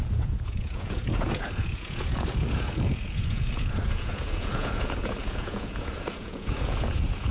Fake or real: fake